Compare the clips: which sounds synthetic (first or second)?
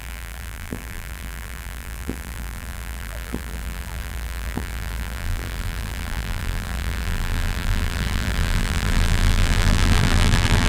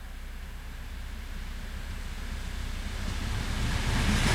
first